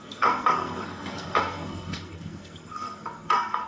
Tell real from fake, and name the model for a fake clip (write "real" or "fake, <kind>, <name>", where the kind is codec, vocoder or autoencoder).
fake, codec, SNAC